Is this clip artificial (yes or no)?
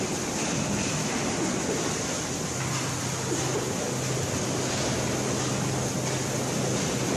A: no